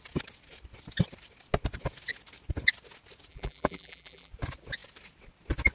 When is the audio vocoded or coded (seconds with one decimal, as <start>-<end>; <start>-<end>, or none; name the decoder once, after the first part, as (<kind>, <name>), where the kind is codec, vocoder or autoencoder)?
3.3-4.3 (vocoder, BigVGAN v2)